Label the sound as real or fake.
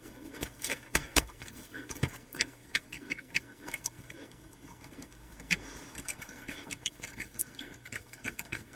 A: fake